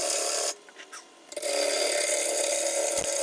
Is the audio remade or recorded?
recorded